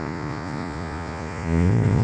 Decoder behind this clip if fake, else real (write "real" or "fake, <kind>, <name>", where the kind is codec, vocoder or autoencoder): fake, vocoder, Vocos